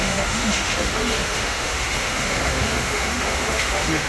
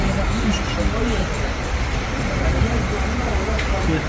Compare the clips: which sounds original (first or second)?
second